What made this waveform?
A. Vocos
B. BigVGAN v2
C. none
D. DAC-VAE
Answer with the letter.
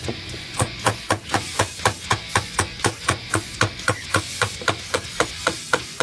A